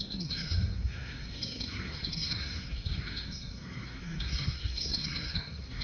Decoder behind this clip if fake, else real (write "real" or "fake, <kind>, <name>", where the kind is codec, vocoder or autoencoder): fake, codec, SNAC